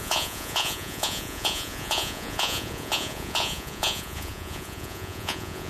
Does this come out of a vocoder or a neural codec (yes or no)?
yes